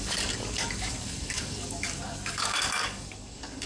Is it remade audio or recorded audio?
remade